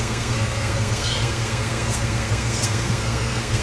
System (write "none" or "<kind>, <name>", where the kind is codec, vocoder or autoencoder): codec, SNAC